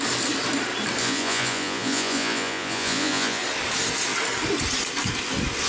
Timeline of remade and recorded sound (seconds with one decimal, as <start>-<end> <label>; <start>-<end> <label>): 0.0-1.0 recorded; 1.0-3.4 remade; 3.4-5.7 recorded